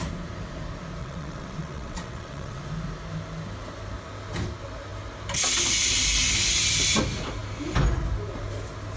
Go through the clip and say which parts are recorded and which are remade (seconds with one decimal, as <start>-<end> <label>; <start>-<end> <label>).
0.0-1.0 recorded; 1.0-2.6 remade; 2.6-9.0 recorded